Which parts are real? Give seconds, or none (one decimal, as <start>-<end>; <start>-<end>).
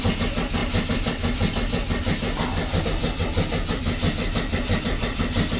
0.0-5.6